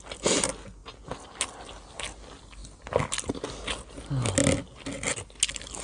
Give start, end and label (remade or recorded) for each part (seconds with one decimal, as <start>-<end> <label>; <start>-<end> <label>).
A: 0.0-5.8 recorded